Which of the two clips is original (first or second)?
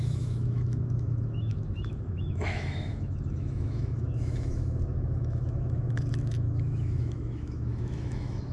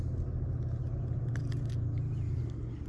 second